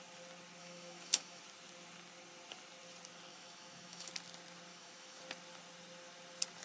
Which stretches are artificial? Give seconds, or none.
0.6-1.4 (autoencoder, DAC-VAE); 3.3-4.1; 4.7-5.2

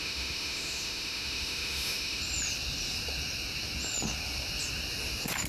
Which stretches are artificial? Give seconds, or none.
0.0-2.2 (autoencoder, DAC-VAE)